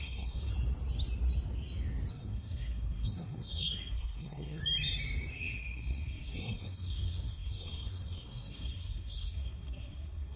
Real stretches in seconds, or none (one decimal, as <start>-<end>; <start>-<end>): 0.5-2.1; 4.6-5.3